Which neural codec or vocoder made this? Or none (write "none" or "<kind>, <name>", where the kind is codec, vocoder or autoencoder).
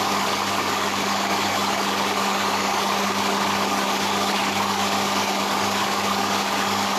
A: codec, DAC